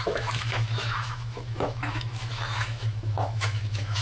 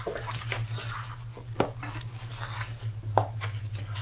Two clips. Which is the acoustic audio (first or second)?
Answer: second